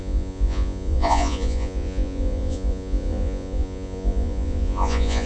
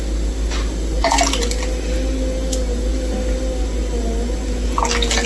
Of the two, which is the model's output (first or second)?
first